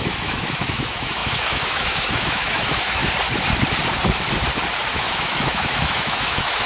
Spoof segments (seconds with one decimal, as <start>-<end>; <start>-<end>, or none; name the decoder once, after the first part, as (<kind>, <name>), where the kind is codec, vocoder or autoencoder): 0.0-3.0 (autoencoder, DAC-VAE); 4.9-6.7

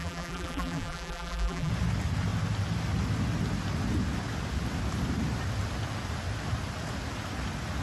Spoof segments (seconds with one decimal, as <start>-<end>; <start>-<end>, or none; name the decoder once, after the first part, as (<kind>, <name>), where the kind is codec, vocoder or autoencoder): 0.0-1.7 (vocoder, BigVGAN v2)